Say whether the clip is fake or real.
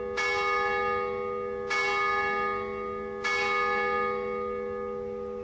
real